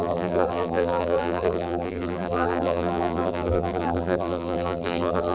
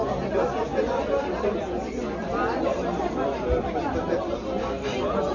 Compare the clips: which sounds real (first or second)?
second